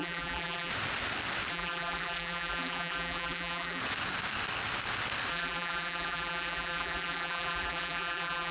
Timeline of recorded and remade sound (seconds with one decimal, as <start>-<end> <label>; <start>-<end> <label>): 0.0-0.7 remade; 0.7-1.5 recorded; 1.5-3.8 remade; 3.8-5.3 recorded; 5.3-8.5 remade